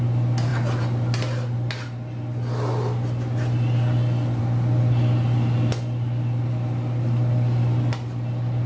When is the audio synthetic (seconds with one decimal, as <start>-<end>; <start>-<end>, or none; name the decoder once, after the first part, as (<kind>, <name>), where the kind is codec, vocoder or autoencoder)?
none